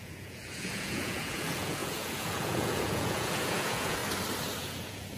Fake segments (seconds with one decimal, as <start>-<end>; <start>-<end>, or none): 0.0-4.0; 4.6-5.2